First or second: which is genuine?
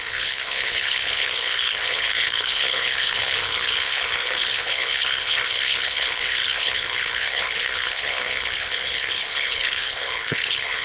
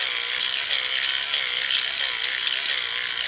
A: second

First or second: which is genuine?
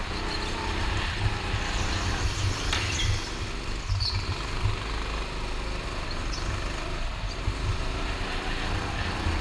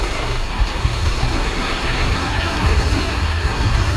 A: first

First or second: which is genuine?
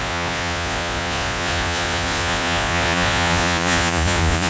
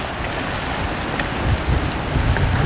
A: second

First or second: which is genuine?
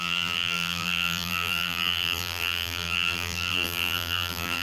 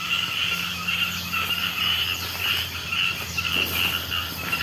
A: second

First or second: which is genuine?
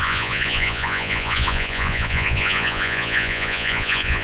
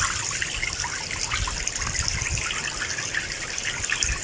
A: second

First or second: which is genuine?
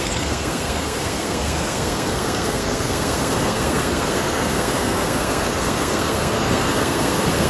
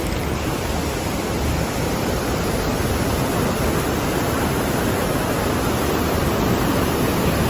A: second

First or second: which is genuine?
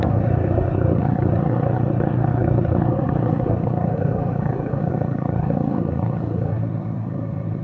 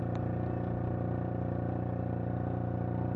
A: second